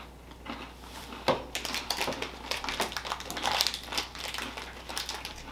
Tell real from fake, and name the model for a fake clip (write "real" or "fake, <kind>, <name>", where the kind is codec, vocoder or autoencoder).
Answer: real